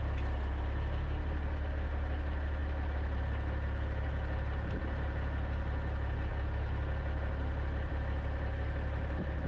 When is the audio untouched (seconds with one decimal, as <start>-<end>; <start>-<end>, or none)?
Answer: 0.0-9.5

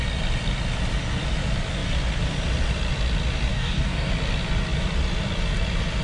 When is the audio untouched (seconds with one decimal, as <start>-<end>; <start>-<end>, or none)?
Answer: 0.0-3.5; 4.1-6.0

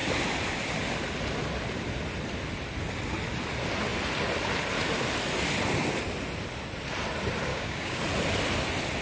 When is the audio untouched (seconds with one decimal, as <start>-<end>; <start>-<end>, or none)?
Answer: 0.0-7.5; 8.0-9.0

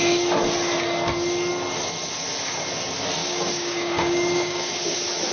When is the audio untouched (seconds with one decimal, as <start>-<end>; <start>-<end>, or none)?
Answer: 0.0-3.2; 4.7-5.3

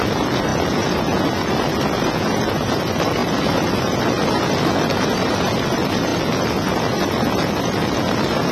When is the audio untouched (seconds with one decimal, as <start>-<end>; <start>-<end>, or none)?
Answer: 0.0-8.5

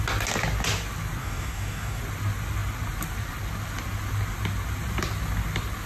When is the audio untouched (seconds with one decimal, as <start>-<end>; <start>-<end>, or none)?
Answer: 0.0-1.2; 2.0-5.9